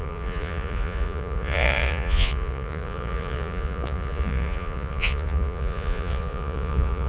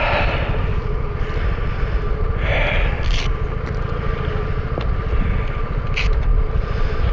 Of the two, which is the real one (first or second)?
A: second